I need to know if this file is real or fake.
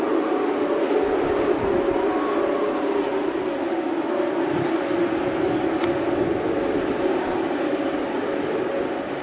real